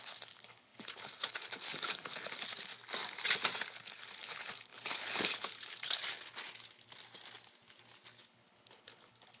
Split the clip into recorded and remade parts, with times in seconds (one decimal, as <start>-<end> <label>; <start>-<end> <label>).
0.0-2.7 remade; 2.7-3.7 recorded; 3.7-6.0 remade; 6.0-8.2 recorded; 8.2-9.4 remade

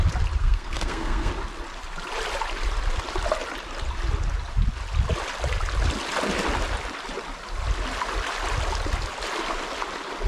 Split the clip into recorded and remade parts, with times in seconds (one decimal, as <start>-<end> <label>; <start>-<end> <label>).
0.0-0.4 recorded; 0.4-1.3 remade; 1.3-10.3 recorded

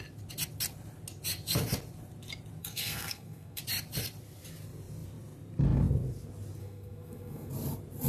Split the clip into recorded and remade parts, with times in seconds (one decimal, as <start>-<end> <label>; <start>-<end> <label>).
0.0-2.6 recorded; 2.6-3.6 remade; 3.6-6.6 recorded; 6.6-7.5 remade; 7.5-8.1 recorded